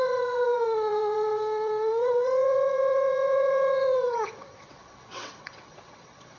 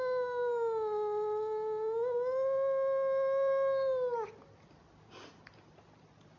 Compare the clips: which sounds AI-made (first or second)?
first